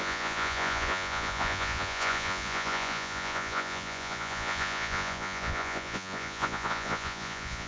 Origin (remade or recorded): remade